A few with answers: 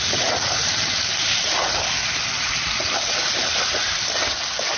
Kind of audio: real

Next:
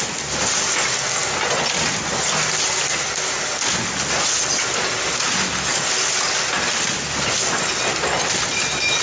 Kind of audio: real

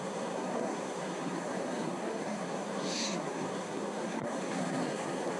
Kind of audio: fake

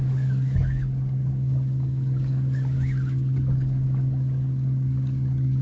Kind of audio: fake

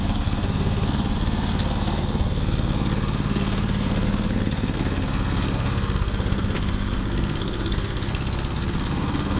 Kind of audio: fake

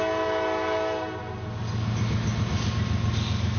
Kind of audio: real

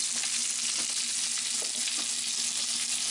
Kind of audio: real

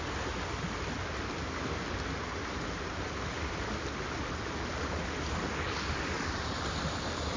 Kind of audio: real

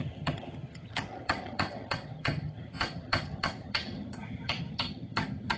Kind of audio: fake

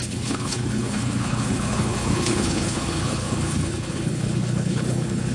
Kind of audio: fake